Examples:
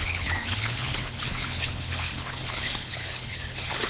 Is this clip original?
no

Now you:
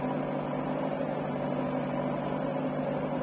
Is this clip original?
yes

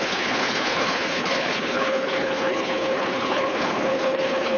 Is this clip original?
no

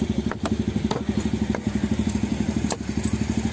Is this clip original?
yes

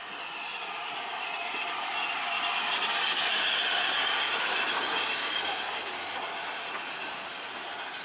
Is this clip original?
yes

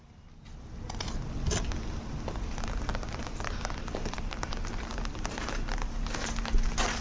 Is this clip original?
yes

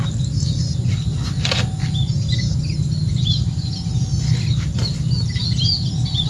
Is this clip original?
yes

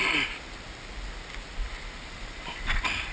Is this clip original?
yes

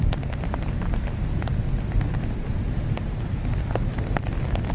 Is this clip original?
yes